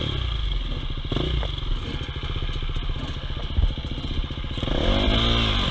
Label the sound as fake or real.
real